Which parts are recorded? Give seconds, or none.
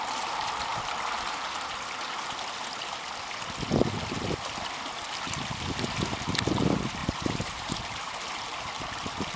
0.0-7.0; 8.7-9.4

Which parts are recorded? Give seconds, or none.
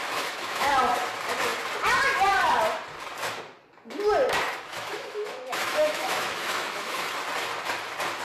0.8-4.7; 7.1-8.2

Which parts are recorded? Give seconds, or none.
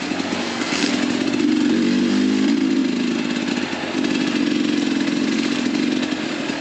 0.0-0.4; 0.9-6.6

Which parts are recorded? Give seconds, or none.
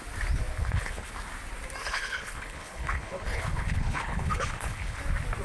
0.0-0.6; 1.1-1.8; 5.0-5.4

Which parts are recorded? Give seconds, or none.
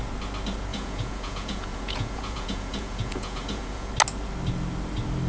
0.0-0.7; 3.9-5.3